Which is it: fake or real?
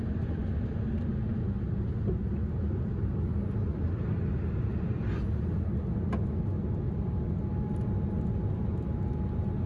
real